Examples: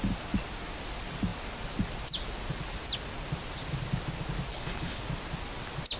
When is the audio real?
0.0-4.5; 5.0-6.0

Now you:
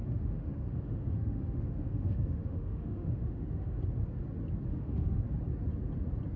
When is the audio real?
3.8-4.7; 5.2-6.4

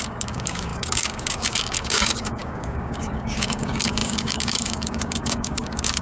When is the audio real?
none

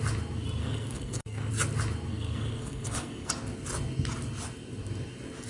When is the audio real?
0.0-0.6; 1.5-2.1; 3.3-5.5

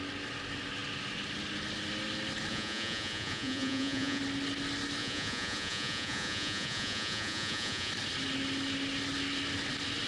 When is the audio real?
0.0-2.5; 4.2-5.0; 7.9-10.1

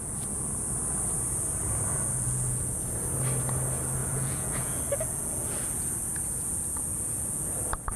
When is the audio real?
0.0-1.9; 2.8-4.0; 4.8-8.0